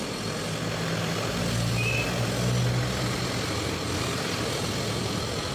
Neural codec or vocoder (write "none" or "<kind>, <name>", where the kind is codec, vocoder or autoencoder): none